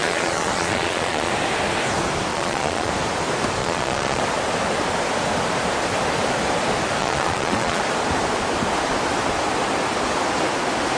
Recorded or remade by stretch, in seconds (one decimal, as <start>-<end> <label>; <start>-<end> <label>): 0.0-1.3 remade; 1.3-2.3 recorded; 2.3-2.9 remade; 2.9-3.6 recorded; 3.6-4.2 remade; 4.2-7.0 recorded; 7.0-7.8 remade; 7.8-11.0 recorded